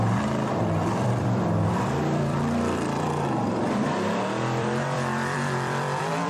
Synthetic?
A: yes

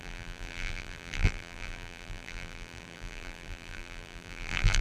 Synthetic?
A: yes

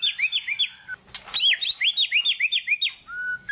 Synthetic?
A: no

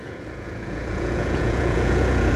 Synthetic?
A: yes